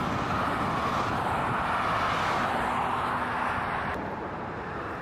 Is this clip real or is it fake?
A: real